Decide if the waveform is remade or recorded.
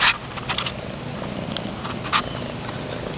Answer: recorded